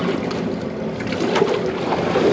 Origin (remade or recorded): recorded